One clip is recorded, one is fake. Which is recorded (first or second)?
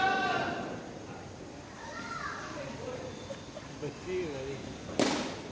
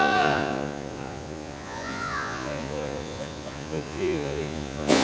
first